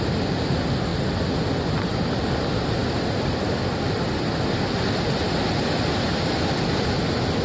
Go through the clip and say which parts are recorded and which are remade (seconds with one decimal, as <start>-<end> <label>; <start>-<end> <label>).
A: 0.0-0.9 recorded; 0.9-1.7 remade; 1.7-7.4 recorded